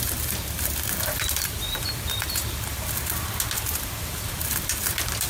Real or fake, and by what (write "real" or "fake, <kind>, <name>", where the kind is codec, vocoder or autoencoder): fake, vocoder, BigVGAN v2